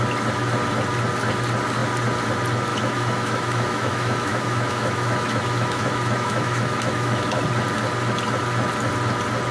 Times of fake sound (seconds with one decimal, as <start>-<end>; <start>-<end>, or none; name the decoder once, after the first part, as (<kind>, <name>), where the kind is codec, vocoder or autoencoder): 2.7-7.4 (autoencoder, DAC-VAE)